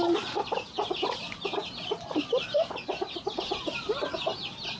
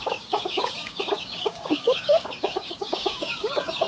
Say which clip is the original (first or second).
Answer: first